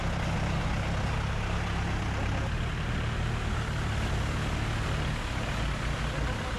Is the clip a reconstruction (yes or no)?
no